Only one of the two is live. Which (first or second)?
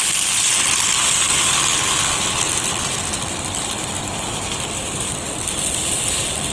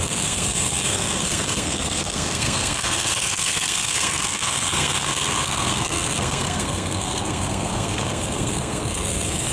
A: first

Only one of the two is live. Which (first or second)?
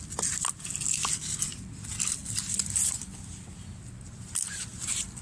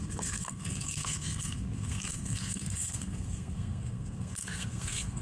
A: first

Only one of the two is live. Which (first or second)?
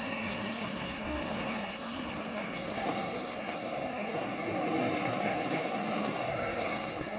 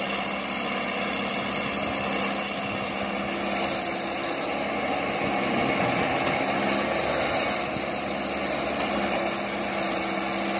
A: second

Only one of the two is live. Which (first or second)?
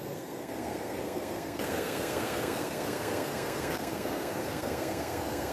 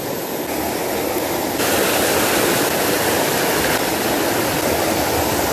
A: second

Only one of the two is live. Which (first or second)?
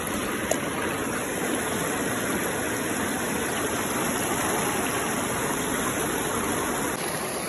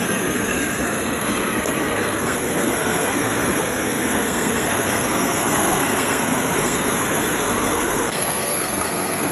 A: first